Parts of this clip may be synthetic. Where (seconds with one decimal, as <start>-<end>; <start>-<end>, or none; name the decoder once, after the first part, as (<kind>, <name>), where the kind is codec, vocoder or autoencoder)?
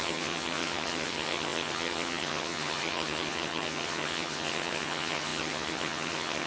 0.0-6.5 (vocoder, HiFi-GAN)